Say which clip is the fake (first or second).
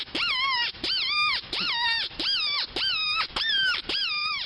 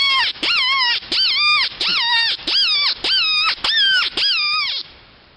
first